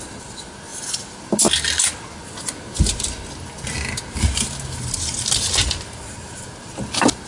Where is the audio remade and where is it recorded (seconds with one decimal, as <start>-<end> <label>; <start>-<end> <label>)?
0.0-7.3 recorded